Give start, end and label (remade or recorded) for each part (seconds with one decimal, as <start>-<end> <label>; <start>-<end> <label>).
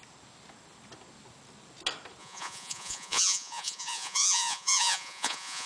0.0-2.2 recorded; 2.2-5.7 remade